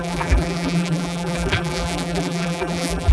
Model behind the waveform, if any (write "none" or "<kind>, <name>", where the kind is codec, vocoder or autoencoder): vocoder, BigVGAN v2